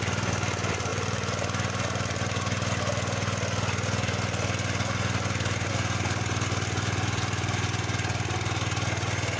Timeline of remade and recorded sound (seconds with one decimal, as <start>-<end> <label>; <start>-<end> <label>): 0.0-9.4 recorded